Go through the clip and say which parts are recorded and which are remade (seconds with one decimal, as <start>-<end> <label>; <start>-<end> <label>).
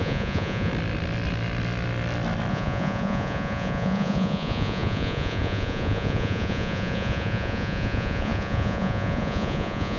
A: 0.0-0.7 remade; 0.7-2.5 recorded; 2.5-10.0 remade